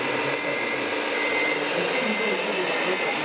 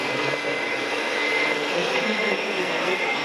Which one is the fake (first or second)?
second